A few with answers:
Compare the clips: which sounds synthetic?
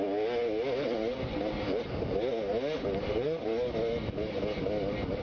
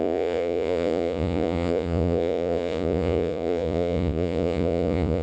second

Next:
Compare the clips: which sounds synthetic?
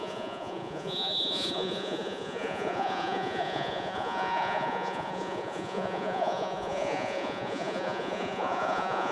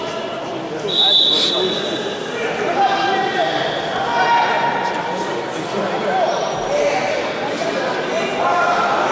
first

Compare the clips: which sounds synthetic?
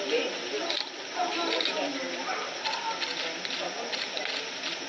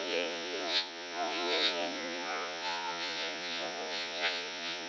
second